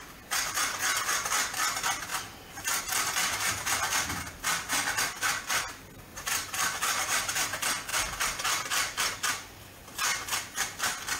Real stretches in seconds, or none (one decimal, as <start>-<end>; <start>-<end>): 0.0-2.1; 2.8-6.1; 7.4-7.9; 9.3-11.2